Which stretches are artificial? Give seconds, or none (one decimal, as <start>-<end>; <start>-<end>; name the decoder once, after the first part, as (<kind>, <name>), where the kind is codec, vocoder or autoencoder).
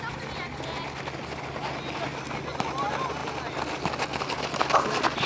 none